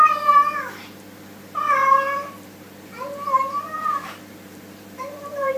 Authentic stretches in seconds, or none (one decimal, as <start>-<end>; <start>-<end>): 0.0-1.8